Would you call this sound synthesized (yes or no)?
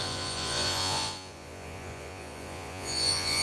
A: yes